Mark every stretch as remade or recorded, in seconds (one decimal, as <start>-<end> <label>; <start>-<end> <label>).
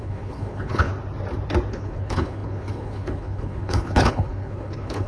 0.0-0.9 remade; 0.9-1.7 recorded; 1.7-5.1 remade